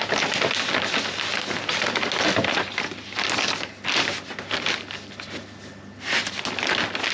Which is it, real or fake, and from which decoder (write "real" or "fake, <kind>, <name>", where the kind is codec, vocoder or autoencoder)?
real